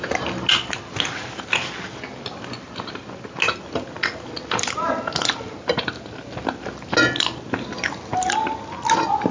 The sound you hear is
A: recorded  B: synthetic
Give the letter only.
A